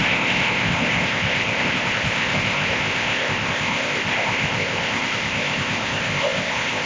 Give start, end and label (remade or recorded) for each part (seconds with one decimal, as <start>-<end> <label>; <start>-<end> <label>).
0.0-6.9 remade